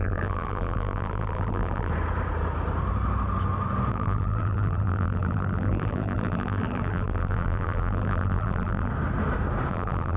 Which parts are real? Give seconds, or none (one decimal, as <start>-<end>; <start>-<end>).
1.9-3.9; 8.9-9.7